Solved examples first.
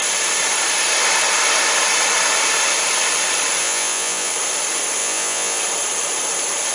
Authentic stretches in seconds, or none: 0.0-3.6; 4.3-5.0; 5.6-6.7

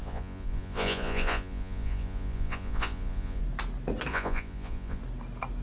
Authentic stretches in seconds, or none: 3.4-4.1; 5.0-5.6

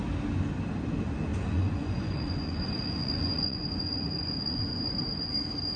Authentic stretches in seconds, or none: 0.0-1.3; 4.8-5.8

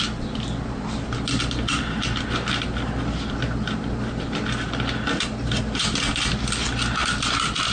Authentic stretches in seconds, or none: 0.0-7.7